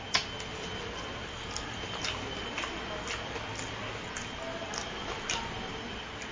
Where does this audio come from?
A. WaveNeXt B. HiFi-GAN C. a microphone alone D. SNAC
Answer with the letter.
C